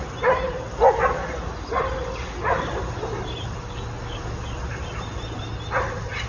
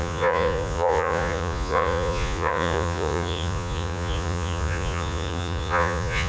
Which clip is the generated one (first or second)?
second